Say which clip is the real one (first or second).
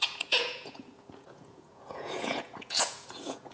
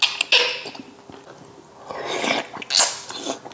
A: second